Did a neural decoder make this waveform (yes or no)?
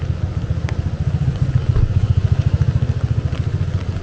no